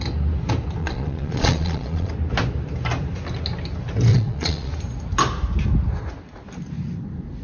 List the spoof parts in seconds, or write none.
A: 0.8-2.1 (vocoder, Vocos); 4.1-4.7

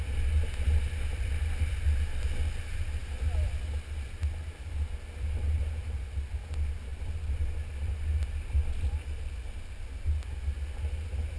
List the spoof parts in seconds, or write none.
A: none

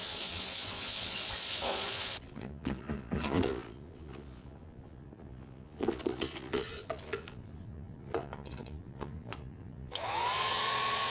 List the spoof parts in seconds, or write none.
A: 0.0-11.1 (vocoder, Vocos)

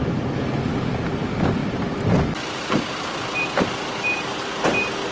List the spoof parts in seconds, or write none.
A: none

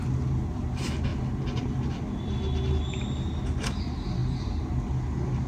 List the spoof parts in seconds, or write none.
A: none